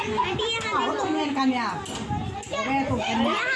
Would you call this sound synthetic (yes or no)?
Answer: no